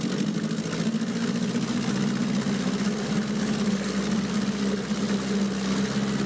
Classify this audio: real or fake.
real